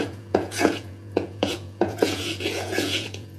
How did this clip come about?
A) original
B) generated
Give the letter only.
B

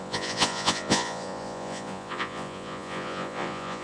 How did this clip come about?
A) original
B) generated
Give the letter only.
B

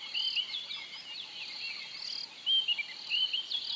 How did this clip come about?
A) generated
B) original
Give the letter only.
B